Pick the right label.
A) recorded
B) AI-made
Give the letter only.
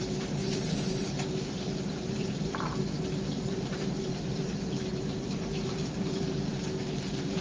B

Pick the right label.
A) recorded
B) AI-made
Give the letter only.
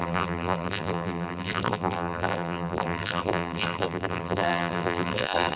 B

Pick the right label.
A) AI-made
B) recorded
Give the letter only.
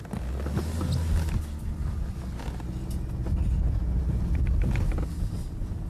B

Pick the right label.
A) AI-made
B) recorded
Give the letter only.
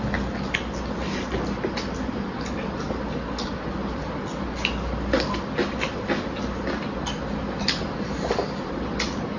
B